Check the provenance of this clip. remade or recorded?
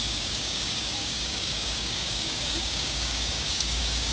remade